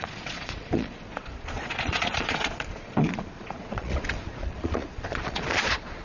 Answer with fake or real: fake